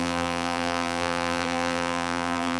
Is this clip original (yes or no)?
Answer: no